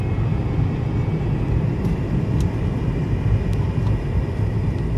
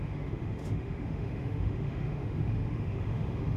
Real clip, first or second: first